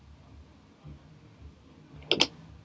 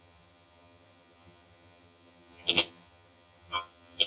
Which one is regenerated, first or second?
second